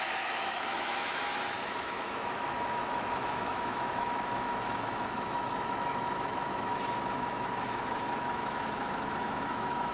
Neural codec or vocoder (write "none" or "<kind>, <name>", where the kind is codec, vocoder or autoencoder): autoencoder, DAC-VAE